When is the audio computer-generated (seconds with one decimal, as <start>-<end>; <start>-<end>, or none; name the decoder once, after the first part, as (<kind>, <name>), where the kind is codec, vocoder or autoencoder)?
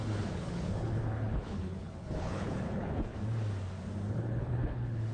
0.0-3.1 (codec, HILCodec); 4.1-5.1